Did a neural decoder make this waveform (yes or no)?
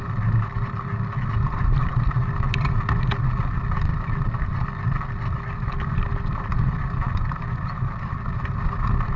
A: no